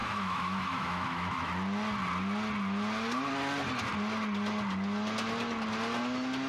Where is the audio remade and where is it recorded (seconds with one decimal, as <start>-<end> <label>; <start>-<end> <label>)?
0.0-1.5 remade; 1.5-6.5 recorded